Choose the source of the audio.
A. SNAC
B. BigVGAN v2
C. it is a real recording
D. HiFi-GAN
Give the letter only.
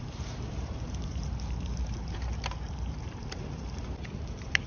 B